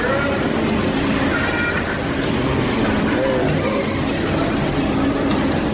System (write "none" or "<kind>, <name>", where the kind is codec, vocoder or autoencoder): none